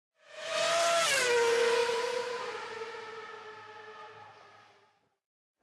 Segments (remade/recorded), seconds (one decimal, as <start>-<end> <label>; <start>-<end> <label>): 0.0-1.8 recorded; 1.8-5.6 remade